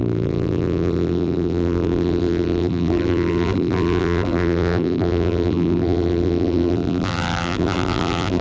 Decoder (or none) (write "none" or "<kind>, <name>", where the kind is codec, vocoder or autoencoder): vocoder, BigVGAN v2